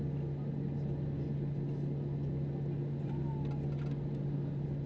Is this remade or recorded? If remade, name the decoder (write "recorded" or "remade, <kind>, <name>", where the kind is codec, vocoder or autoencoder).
recorded